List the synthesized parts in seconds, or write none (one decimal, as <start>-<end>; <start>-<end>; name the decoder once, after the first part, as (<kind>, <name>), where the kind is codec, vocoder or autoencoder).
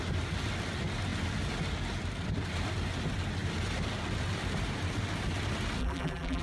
5.8-6.4 (vocoder, BigVGAN v2)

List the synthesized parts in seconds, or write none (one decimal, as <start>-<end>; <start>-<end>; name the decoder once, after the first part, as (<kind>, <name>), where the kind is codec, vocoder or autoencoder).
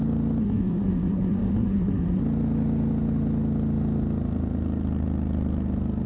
0.4-2.2 (codec, SNAC)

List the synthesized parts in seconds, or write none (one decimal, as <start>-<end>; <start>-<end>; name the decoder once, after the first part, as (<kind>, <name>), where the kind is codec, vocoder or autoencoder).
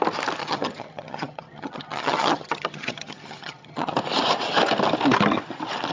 0.4-3.9 (vocoder, HiFi-GAN)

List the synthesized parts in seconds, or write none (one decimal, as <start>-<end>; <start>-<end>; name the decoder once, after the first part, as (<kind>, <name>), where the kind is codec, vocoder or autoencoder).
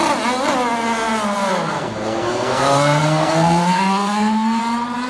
1.5-4.6 (codec, SNAC)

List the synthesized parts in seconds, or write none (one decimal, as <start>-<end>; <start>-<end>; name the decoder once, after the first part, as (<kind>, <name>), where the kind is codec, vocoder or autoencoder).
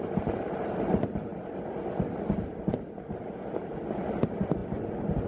none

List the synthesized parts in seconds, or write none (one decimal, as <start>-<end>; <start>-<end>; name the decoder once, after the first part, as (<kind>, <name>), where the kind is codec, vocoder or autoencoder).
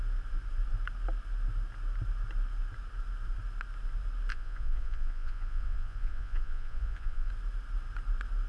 4.3-7.3 (vocoder, Vocos)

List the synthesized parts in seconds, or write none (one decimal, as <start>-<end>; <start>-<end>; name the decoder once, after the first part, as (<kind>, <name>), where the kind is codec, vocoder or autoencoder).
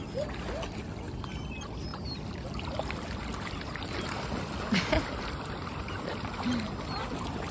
1.9-5.9 (vocoder, BigVGAN v2)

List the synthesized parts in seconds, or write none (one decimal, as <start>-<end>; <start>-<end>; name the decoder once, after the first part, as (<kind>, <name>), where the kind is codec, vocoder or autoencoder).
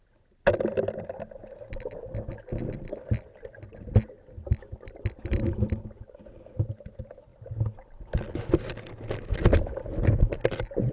none